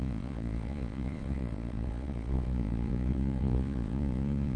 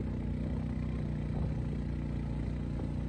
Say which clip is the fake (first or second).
first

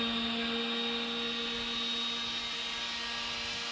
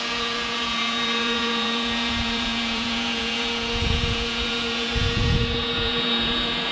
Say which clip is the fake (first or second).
second